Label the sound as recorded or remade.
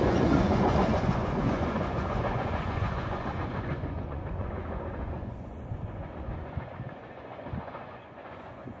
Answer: remade